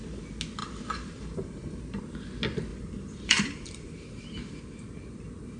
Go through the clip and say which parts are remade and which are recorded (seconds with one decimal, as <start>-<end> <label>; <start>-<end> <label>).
0.0-0.6 recorded; 0.6-2.0 remade; 2.0-2.7 recorded; 2.7-4.6 remade; 4.6-5.6 recorded

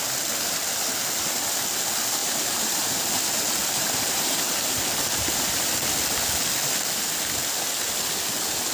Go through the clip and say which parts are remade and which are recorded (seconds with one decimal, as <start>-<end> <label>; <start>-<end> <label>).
0.0-2.2 recorded; 2.2-3.0 remade; 3.0-3.6 recorded; 3.6-5.7 remade; 5.7-8.7 recorded

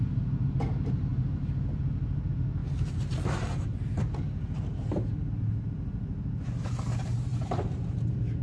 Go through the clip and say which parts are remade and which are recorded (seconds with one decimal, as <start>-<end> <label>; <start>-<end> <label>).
0.0-2.6 recorded; 2.6-5.3 remade; 5.3-7.3 recorded; 7.3-8.4 remade

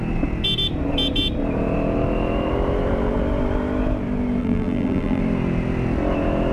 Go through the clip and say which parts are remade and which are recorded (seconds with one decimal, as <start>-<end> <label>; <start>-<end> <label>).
0.0-4.4 recorded; 4.4-5.2 remade; 5.2-6.5 recorded